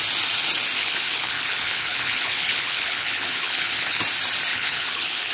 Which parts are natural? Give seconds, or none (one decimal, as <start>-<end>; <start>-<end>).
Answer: 0.0-0.8; 4.0-4.5